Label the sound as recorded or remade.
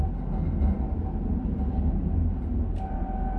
recorded